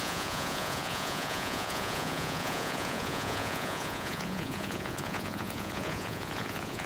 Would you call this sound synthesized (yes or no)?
yes